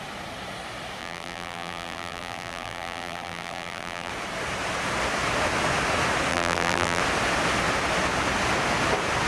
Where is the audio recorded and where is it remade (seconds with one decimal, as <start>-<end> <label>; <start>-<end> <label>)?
0.0-1.0 recorded; 1.0-4.1 remade; 4.1-6.3 recorded; 6.3-7.0 remade; 7.0-9.3 recorded

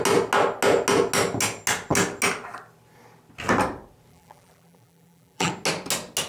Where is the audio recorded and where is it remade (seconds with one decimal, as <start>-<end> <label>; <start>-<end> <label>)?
0.0-4.1 recorded; 4.1-5.5 remade; 5.5-6.3 recorded